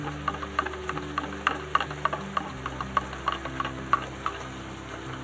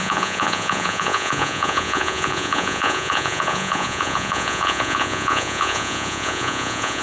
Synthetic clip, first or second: second